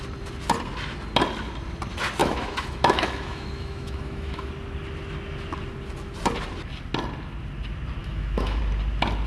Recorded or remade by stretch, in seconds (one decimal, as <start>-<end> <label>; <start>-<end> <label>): 0.0-2.2 recorded; 2.2-4.5 remade; 4.5-8.0 recorded; 8.0-8.6 remade; 8.6-9.3 recorded